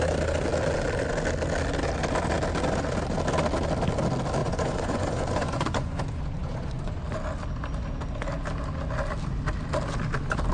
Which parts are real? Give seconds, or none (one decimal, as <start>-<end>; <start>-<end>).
0.0-4.4; 7.0-10.5